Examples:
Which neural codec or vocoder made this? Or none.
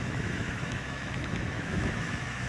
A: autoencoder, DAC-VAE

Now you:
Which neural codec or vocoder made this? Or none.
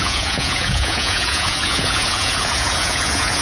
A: vocoder, Vocos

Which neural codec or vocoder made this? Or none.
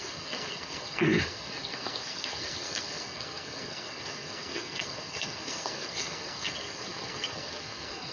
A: codec, SNAC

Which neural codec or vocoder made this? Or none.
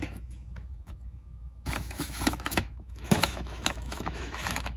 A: autoencoder, DAC-VAE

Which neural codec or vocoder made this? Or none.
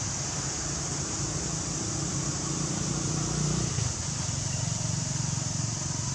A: vocoder, BigVGAN v2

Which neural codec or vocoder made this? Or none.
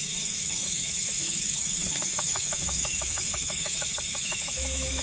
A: autoencoder, DAC-VAE